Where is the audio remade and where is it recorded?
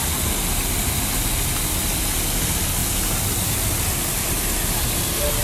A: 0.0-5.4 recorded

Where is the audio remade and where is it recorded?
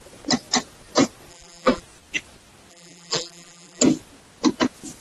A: 0.0-1.3 recorded; 1.3-1.8 remade; 1.8-2.7 recorded; 2.7-3.8 remade; 3.8-5.0 recorded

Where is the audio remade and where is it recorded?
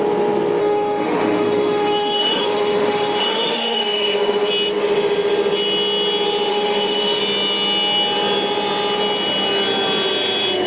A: 0.0-0.6 recorded; 0.6-4.5 remade; 4.5-6.5 recorded; 6.5-7.2 remade; 7.2-10.7 recorded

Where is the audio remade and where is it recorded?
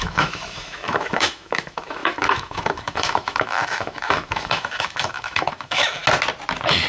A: 0.0-6.0 remade; 6.0-6.9 recorded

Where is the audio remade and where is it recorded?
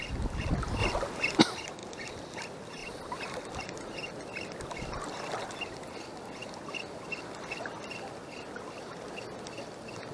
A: 0.0-1.8 recorded; 1.8-2.4 remade; 2.4-2.8 recorded; 2.8-3.6 remade; 3.6-6.4 recorded; 6.4-7.5 remade; 7.5-10.1 recorded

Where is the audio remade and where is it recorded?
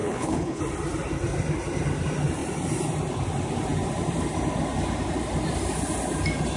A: 0.0-0.6 remade; 0.6-6.6 recorded